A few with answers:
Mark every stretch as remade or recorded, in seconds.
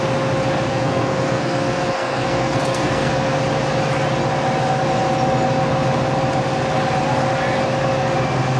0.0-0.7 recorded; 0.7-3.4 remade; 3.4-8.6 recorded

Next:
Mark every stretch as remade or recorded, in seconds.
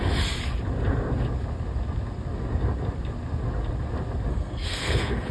0.0-4.3 recorded; 4.3-5.3 remade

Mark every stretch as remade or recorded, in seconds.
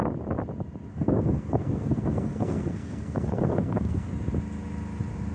0.0-0.9 recorded; 0.9-4.1 remade; 4.1-5.3 recorded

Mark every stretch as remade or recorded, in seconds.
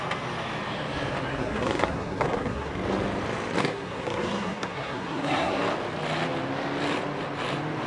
0.0-1.3 recorded; 1.3-2.7 remade; 2.7-3.6 recorded; 3.6-5.6 remade; 5.6-7.9 recorded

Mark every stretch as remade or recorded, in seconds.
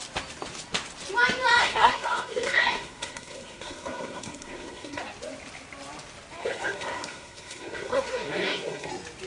0.0-1.6 recorded; 1.6-5.0 remade; 5.0-6.4 recorded; 6.4-8.9 remade; 8.9-9.3 recorded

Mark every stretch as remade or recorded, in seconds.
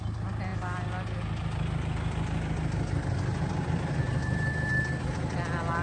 0.0-5.8 recorded